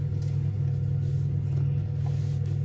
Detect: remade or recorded recorded